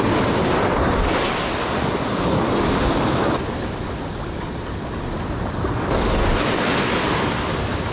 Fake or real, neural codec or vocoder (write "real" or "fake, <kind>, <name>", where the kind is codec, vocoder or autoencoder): real